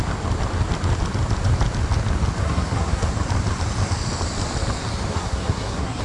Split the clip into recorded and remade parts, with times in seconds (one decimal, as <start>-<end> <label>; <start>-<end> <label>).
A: 0.0-2.4 recorded; 2.4-3.1 remade; 3.1-5.1 recorded; 5.1-6.0 remade